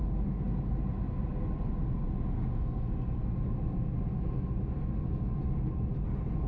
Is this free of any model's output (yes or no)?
yes